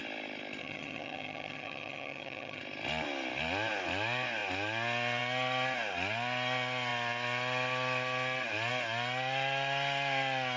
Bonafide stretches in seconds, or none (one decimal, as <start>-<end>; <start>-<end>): 0.0-0.6; 2.6-10.6